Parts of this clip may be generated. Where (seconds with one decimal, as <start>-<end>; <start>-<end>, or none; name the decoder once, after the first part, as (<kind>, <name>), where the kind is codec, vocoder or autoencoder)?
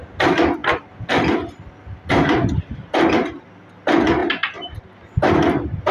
none